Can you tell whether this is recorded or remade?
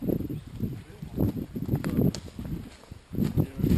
recorded